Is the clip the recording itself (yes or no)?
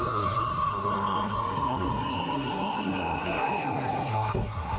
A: no